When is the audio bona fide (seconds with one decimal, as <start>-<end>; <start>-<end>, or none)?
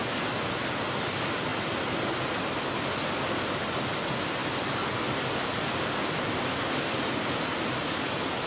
0.0-8.5